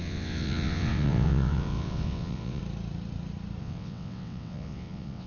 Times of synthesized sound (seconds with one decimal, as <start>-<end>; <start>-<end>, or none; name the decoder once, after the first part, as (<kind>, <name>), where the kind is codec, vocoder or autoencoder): 0.0-2.6 (vocoder, WaveNeXt); 3.6-5.3